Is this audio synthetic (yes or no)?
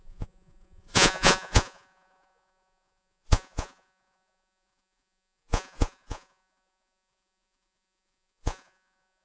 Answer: yes